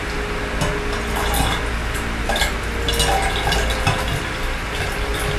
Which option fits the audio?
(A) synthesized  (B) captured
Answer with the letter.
B